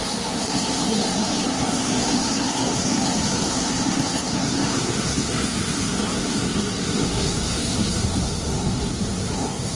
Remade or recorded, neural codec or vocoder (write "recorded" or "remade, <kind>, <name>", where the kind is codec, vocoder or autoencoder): remade, codec, SNAC